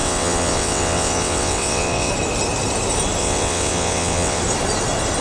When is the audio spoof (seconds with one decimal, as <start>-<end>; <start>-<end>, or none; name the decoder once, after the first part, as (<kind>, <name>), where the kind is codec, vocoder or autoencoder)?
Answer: 0.0-2.1 (vocoder, WaveNeXt); 3.2-4.4